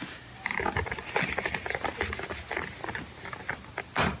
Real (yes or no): yes